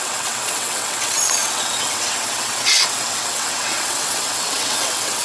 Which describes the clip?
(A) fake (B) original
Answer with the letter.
A